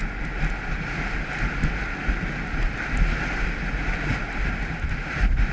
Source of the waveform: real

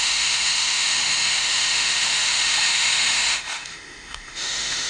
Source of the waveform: fake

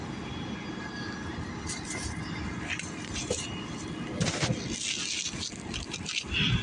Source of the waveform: real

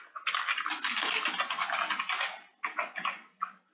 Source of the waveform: real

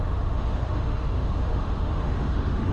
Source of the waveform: fake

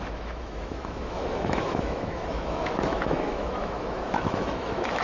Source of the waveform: fake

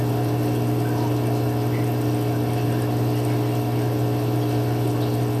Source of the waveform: real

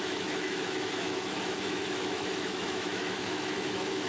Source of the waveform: fake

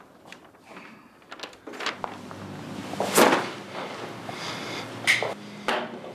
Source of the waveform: real